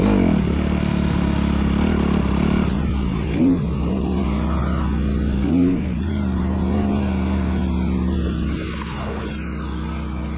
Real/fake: real